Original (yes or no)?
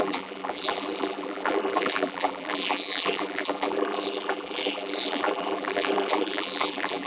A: no